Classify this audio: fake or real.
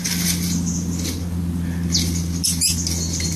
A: real